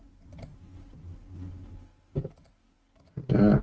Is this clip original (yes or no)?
yes